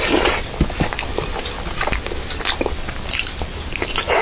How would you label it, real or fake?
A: real